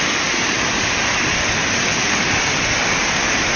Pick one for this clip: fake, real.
real